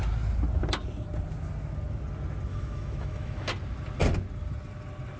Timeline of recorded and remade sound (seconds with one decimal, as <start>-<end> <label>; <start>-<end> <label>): 0.0-2.5 recorded; 2.5-3.5 remade; 3.5-5.2 recorded